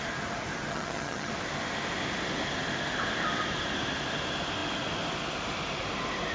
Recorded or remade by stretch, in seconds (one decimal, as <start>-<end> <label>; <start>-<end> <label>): 0.0-0.7 recorded; 0.7-1.3 remade; 1.3-6.3 recorded